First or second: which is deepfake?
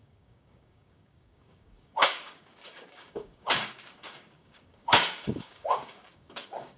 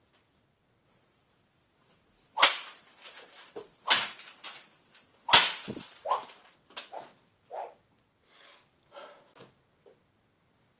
first